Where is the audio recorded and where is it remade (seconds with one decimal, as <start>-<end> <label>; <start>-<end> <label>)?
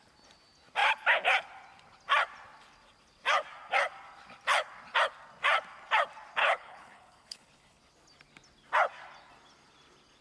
0.0-6.4 recorded; 6.4-7.8 remade; 7.8-10.2 recorded